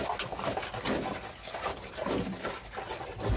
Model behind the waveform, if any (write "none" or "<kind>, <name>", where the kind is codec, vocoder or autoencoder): none